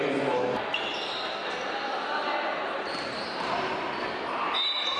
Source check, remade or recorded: recorded